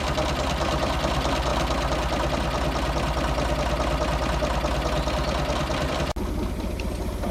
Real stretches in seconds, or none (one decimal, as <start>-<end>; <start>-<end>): 0.0-7.3